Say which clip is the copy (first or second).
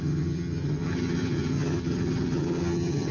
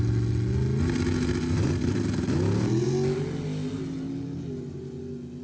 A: first